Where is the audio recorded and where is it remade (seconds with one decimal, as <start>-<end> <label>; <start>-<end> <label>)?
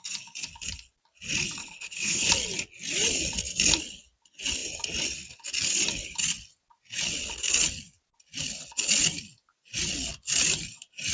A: 0.0-1.6 recorded; 1.6-2.3 remade; 2.3-11.1 recorded